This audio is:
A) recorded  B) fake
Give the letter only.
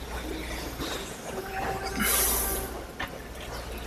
A